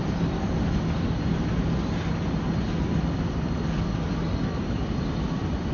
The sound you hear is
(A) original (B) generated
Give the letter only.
A